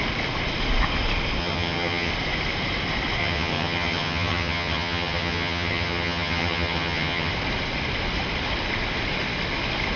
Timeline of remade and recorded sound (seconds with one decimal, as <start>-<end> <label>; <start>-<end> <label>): 0.0-1.4 recorded; 1.4-2.1 remade; 2.1-3.2 recorded; 3.2-7.3 remade; 7.3-10.0 recorded